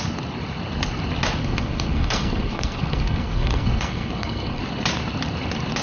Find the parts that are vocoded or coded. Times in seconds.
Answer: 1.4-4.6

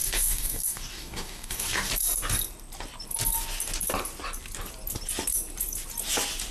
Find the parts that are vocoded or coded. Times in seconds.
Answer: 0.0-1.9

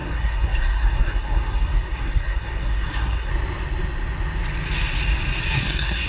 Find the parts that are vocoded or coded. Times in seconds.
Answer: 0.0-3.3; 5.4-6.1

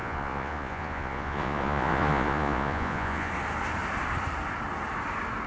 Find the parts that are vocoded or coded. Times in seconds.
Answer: 0.0-3.3

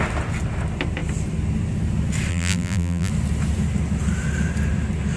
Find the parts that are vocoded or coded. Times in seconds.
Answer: 2.3-3.1

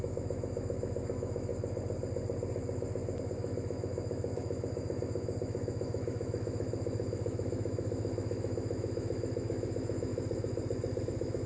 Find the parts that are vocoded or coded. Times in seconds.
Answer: 0.0-1.5; 3.2-10.1; 11.0-11.5

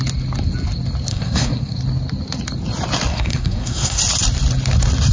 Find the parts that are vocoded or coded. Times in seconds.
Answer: 1.1-1.8; 3.1-4.0

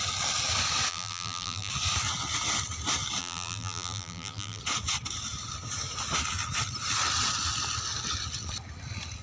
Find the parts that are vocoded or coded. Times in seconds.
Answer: 0.9-1.7; 3.2-4.6